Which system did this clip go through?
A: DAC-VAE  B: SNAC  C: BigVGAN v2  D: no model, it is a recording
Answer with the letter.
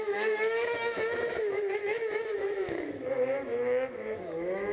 A